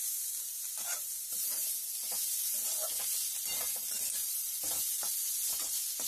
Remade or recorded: recorded